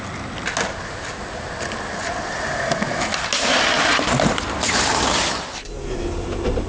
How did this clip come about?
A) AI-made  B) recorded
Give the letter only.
B